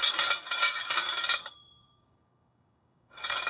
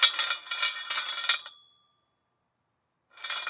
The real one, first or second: second